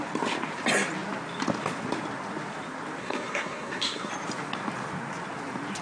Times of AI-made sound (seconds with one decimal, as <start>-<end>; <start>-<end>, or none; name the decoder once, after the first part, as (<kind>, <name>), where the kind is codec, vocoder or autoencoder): 3.0-4.1 (codec, SNAC)